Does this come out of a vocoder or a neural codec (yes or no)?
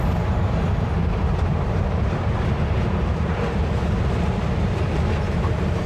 yes